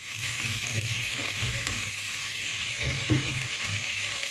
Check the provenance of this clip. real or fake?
fake